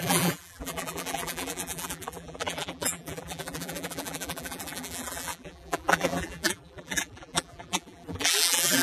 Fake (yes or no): yes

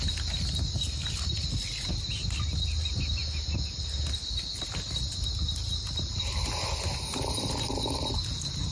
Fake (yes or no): no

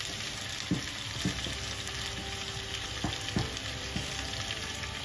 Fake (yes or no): no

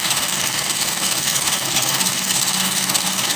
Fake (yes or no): yes